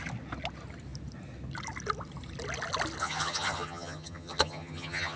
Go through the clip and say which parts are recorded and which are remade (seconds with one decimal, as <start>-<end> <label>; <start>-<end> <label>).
0.0-3.0 recorded; 3.0-5.2 remade

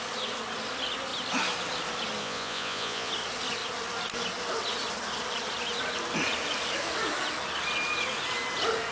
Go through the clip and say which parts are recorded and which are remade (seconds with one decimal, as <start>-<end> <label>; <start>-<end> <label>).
0.0-2.2 recorded; 2.2-3.1 remade; 3.1-8.9 recorded

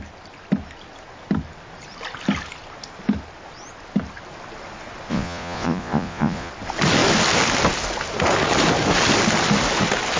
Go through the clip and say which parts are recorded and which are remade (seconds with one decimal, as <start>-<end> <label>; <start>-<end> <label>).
0.0-5.1 recorded; 5.1-6.5 remade; 6.5-10.2 recorded